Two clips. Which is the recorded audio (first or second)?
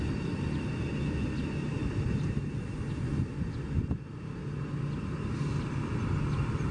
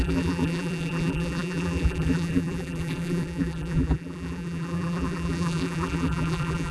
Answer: first